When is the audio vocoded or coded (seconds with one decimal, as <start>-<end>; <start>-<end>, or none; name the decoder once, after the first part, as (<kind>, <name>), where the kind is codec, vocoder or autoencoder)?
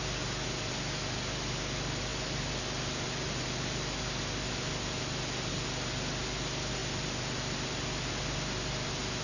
none